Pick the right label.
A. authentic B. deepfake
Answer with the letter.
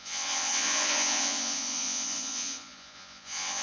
B